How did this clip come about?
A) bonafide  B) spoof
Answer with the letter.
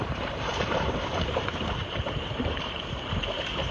B